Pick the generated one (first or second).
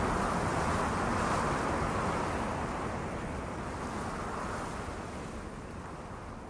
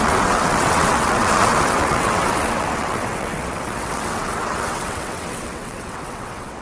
second